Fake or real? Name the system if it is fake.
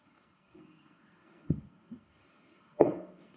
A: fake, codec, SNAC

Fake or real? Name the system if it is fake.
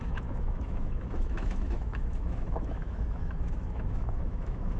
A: fake, autoencoder, DAC-VAE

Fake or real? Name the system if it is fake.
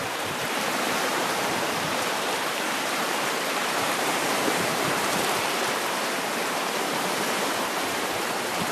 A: fake, vocoder, BigVGAN v2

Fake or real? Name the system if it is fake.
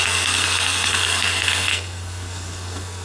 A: fake, codec, SNAC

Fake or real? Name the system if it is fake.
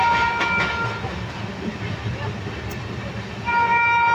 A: real